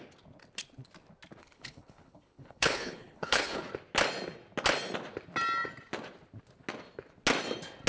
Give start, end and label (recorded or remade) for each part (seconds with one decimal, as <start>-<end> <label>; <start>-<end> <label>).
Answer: 0.0-1.4 recorded; 1.4-3.7 remade; 3.7-7.9 recorded

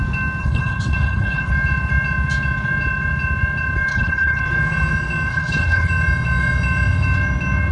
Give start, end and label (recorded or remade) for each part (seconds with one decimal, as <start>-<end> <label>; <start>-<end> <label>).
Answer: 0.0-0.4 recorded; 0.4-1.5 remade; 1.5-3.9 recorded; 3.9-4.4 remade; 4.4-5.3 recorded; 5.3-5.9 remade; 5.9-7.7 recorded

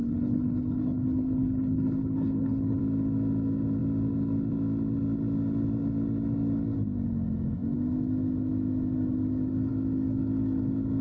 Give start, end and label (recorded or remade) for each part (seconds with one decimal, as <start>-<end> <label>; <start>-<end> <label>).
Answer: 0.0-2.8 remade; 2.8-11.0 recorded

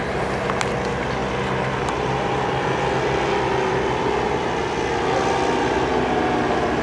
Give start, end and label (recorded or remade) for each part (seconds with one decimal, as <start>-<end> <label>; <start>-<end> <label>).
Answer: 0.0-6.8 recorded

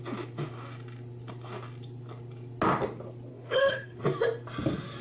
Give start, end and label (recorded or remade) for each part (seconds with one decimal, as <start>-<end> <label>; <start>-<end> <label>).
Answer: 0.0-3.3 recorded; 3.3-4.0 remade; 4.0-5.0 recorded

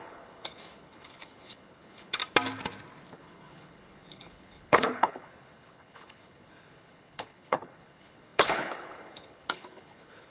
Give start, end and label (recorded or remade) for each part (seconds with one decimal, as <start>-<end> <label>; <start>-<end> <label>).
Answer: 0.0-2.2 remade; 2.2-3.1 recorded; 3.1-10.3 remade